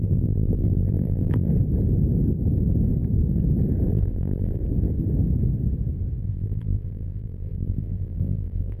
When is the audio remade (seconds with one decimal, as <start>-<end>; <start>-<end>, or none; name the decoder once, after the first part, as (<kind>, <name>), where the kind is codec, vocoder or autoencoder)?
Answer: 0.0-1.5 (vocoder, BigVGAN v2); 3.9-4.6; 6.2-8.8